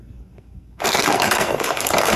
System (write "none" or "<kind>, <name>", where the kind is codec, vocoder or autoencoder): codec, SNAC